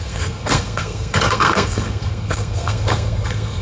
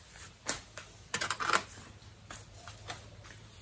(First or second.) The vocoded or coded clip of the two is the first